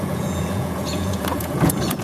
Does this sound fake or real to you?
fake